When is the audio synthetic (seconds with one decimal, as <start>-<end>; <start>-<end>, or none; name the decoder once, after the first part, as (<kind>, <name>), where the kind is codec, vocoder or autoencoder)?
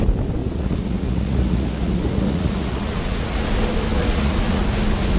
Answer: 0.4-3.5 (vocoder, Vocos); 3.9-4.6